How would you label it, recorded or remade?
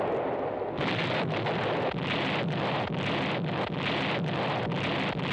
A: recorded